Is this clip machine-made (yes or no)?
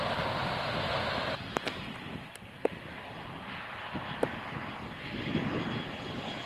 no